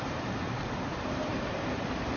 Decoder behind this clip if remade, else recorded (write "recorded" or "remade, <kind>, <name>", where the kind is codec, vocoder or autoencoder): remade, vocoder, BigVGAN v2